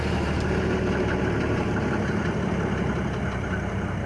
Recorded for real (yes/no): no